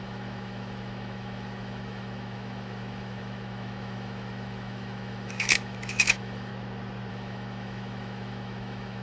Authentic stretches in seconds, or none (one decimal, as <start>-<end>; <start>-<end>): 6.5-7.1